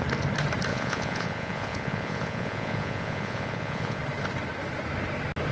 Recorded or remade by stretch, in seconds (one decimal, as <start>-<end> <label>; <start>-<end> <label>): 0.0-0.7 recorded; 0.7-4.0 remade; 4.0-5.5 recorded